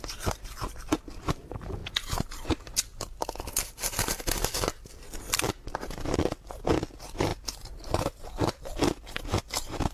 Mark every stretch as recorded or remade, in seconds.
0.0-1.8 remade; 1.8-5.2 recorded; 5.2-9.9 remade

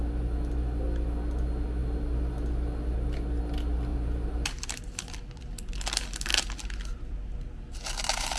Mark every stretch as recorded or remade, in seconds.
0.0-3.9 recorded; 3.9-4.8 remade; 4.8-8.4 recorded

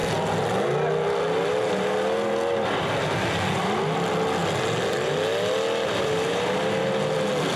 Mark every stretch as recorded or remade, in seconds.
0.0-7.6 recorded

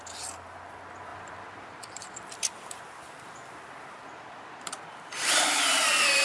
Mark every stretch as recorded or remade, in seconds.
0.0-1.1 recorded; 1.1-4.8 remade; 4.8-6.2 recorded

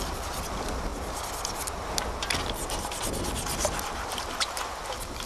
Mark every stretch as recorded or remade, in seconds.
0.0-0.9 remade; 0.9-3.8 recorded; 3.8-5.3 remade

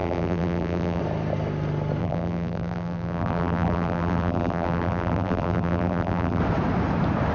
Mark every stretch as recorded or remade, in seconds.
0.0-1.0 remade; 1.0-2.0 recorded; 2.0-6.4 remade; 6.4-7.3 recorded

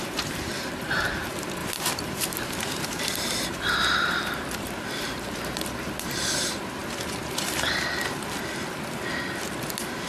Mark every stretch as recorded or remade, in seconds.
0.0-6.8 remade; 6.8-10.1 recorded

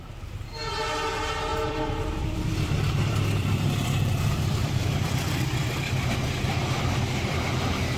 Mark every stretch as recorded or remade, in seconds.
0.0-1.5 recorded; 1.5-6.1 remade; 6.1-8.0 recorded